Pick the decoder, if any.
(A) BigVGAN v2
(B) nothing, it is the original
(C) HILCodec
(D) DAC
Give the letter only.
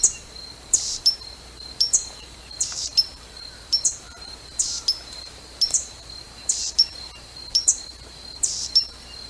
A